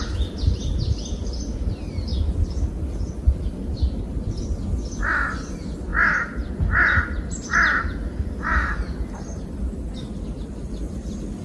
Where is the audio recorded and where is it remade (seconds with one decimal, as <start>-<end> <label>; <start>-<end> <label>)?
0.0-11.4 recorded